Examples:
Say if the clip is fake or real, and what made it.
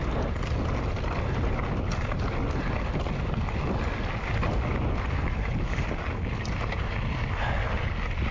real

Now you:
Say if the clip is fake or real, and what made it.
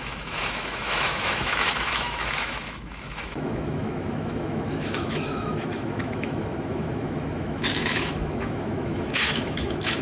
fake, autoencoder, DAC-VAE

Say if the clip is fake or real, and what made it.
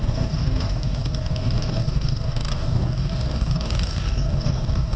fake, codec, DAC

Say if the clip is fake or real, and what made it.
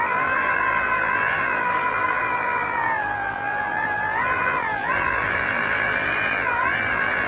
fake, vocoder, BigVGAN v2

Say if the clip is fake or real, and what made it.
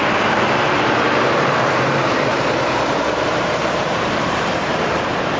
fake, vocoder, BigVGAN v2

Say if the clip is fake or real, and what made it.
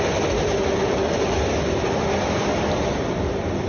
real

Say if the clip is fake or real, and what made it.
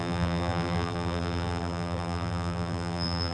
fake, vocoder, BigVGAN v2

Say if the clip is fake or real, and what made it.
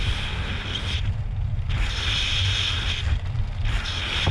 real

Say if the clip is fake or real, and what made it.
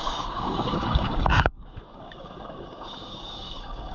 fake, codec, DAC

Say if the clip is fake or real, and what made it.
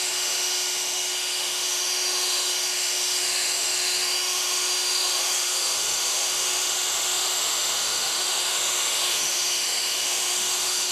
fake, autoencoder, DAC-VAE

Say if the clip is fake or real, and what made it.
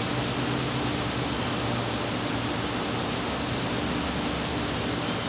real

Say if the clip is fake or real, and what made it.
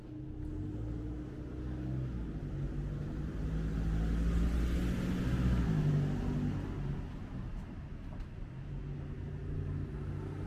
real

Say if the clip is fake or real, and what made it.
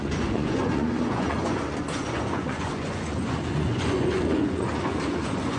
fake, vocoder, Vocos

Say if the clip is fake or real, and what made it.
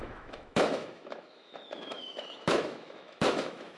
fake, autoencoder, DAC-VAE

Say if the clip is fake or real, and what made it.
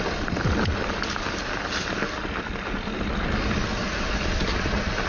real